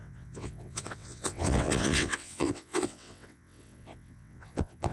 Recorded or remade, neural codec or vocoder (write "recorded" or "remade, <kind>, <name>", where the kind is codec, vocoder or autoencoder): remade, vocoder, WaveNeXt